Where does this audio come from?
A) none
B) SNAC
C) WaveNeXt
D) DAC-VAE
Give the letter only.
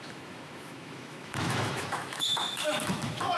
D